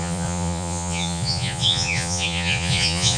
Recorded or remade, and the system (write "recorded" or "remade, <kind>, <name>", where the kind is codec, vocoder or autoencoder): remade, vocoder, Vocos